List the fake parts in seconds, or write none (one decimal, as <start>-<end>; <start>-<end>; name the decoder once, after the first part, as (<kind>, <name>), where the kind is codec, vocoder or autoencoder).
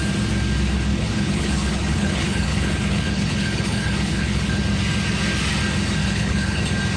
0.9-4.6 (codec, HILCodec); 6.0-6.6